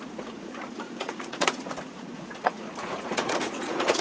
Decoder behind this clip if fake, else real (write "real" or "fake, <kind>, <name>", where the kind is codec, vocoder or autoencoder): fake, vocoder, Vocos